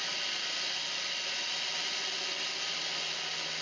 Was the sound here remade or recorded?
recorded